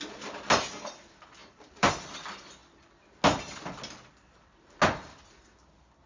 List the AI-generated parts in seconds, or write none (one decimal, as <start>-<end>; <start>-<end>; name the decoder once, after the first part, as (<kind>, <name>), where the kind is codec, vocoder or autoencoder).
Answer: 1.4-1.9 (vocoder, BigVGAN v2)